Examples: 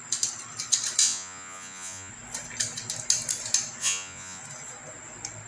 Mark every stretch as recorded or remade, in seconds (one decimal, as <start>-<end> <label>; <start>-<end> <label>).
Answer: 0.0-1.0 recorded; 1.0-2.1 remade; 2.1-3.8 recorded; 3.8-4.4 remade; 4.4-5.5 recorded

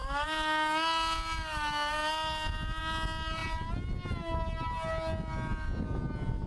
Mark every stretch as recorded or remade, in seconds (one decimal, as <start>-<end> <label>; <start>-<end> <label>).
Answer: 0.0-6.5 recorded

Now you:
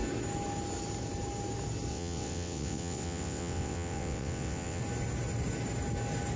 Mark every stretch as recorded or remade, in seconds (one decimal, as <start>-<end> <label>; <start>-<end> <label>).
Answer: 0.0-1.9 recorded; 1.9-4.8 remade; 4.8-6.4 recorded